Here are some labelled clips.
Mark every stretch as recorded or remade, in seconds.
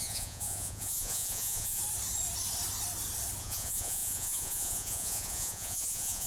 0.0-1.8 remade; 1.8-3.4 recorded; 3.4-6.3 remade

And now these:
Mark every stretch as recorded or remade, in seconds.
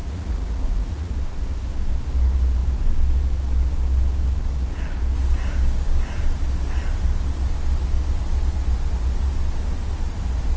0.0-1.1 remade; 1.1-10.6 recorded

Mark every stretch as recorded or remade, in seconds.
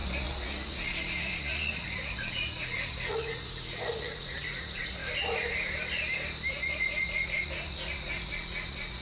0.0-5.0 remade; 5.0-6.5 recorded; 6.5-9.0 remade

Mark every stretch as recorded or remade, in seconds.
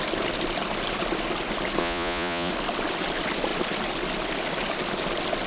0.0-1.8 recorded; 1.8-2.5 remade; 2.5-5.5 recorded